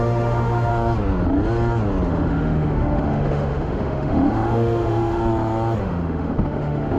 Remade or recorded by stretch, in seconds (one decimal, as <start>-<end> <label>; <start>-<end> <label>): 0.0-0.7 remade; 0.7-2.1 recorded; 2.1-5.2 remade; 5.2-5.8 recorded; 5.8-7.0 remade